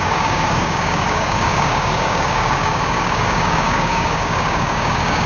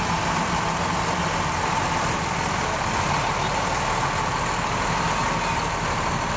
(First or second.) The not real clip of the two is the first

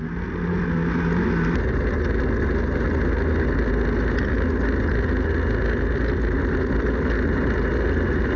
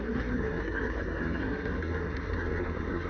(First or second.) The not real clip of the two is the second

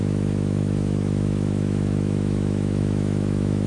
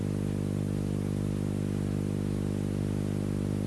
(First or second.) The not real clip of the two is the first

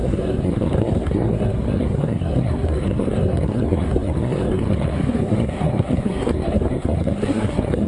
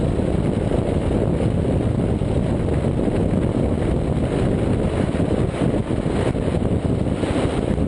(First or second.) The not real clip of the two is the first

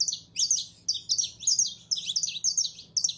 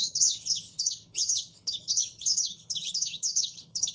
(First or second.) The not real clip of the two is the second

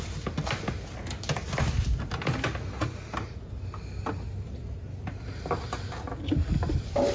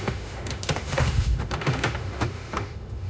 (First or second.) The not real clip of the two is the second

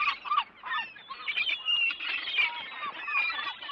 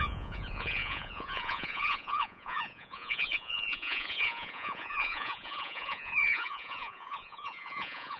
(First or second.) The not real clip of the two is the second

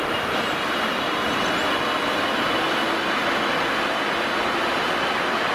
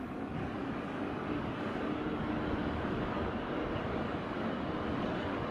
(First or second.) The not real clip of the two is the second